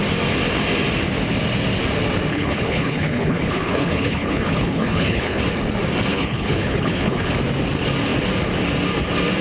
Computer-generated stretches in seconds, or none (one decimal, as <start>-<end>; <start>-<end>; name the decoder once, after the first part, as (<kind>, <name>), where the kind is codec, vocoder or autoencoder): 2.3-5.4 (codec, HILCodec); 6.1-7.3